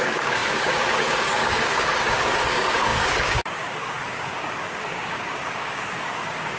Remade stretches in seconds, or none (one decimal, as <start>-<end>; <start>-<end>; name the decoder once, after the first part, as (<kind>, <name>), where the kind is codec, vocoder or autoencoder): 0.0-6.6 (codec, DAC)